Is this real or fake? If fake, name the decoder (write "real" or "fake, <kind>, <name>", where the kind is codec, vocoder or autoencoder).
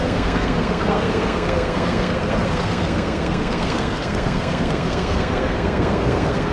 fake, codec, SNAC